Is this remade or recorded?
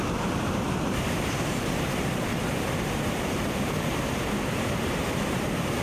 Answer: remade